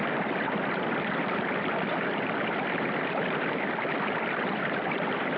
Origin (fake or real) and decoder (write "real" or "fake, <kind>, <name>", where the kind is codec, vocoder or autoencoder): fake, vocoder, BigVGAN v2